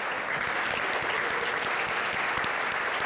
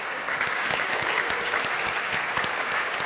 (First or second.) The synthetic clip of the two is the second